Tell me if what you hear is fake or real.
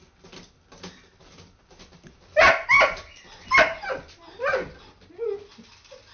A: real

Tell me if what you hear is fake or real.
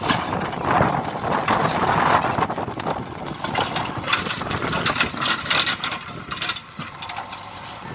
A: real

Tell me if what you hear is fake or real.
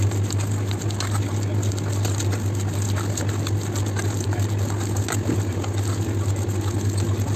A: real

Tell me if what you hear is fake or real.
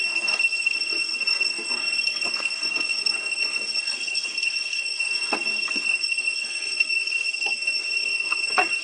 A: fake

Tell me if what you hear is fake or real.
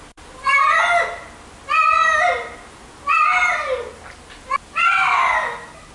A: real